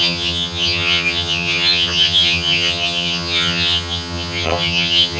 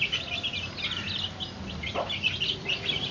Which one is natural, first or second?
second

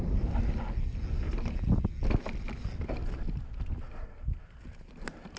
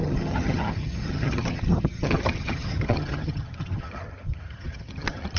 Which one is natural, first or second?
first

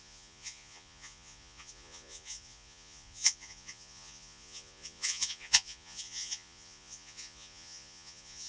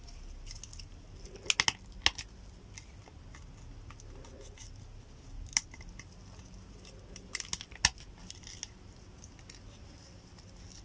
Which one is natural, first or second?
second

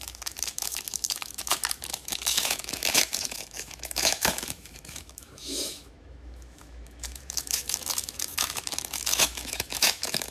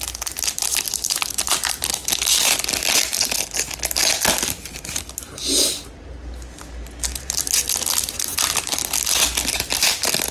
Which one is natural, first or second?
second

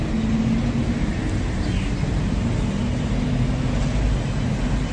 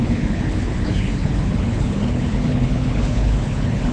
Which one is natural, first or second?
first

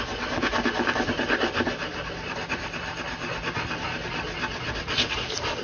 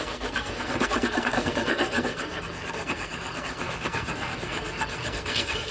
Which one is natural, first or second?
first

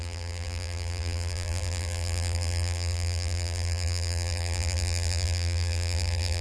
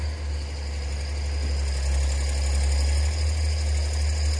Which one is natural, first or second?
second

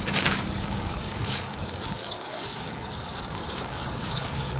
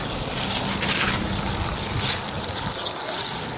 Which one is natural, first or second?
second